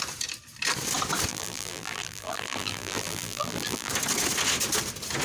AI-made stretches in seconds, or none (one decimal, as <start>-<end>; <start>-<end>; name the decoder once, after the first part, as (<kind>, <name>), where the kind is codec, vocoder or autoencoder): 1.3-3.9 (vocoder, BigVGAN v2)